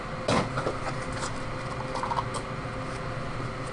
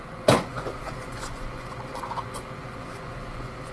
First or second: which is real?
first